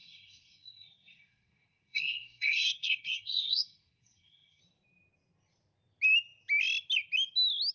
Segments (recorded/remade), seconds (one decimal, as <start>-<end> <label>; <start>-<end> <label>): 0.0-4.6 remade; 4.6-7.7 recorded